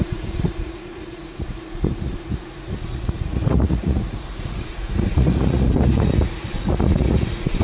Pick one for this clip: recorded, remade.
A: remade